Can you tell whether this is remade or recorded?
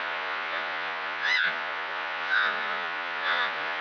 remade